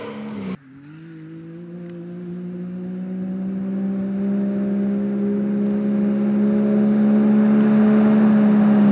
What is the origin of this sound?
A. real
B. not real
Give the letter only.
A